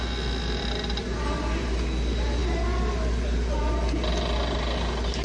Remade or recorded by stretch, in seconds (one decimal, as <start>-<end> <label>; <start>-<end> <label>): 0.0-5.2 recorded